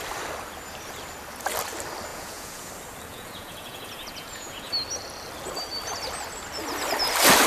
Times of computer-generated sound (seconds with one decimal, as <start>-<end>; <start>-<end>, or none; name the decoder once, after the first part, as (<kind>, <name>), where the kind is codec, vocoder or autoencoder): 2.1-2.7 (vocoder, Vocos); 3.1-4.7